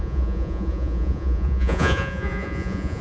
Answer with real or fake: fake